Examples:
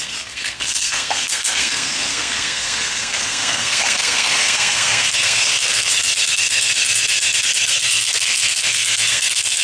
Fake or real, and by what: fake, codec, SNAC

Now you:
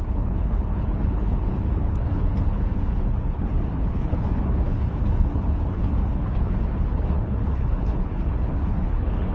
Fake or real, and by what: fake, codec, HILCodec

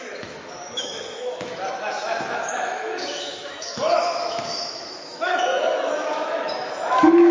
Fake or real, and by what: fake, autoencoder, DAC-VAE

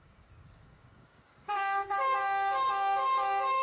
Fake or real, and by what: fake, codec, DAC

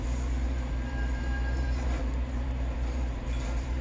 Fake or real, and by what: fake, vocoder, BigVGAN v2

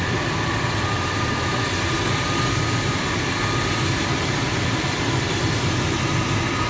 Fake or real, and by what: real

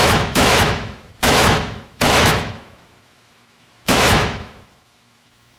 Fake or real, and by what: fake, autoencoder, DAC-VAE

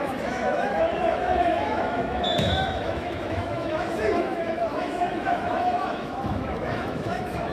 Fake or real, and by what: fake, autoencoder, DAC-VAE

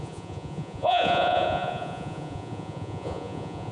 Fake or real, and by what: fake, vocoder, Vocos